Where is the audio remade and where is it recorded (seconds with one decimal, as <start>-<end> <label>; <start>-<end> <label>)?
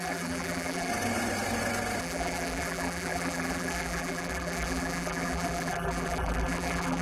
0.0-0.9 remade; 0.9-2.0 recorded; 2.0-7.0 remade